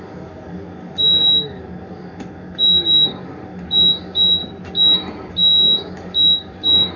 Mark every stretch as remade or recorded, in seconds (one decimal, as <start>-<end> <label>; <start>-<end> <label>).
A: 0.0-4.4 remade; 4.4-5.3 recorded; 5.3-7.0 remade